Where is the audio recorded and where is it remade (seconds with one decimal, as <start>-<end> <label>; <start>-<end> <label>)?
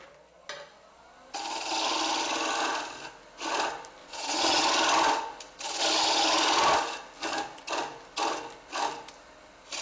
0.0-4.0 recorded; 4.0-4.6 remade; 4.6-9.8 recorded